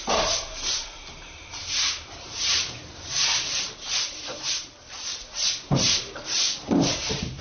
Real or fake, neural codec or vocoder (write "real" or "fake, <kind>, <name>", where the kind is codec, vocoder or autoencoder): fake, vocoder, BigVGAN v2